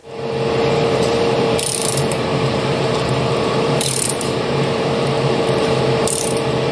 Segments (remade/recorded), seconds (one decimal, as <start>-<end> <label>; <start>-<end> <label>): 0.0-0.7 recorded; 0.7-6.7 remade